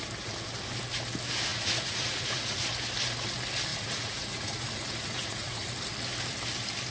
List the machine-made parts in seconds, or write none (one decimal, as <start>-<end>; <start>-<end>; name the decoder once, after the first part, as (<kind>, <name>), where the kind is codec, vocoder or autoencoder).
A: 1.5-2.6 (vocoder, Vocos); 3.7-5.7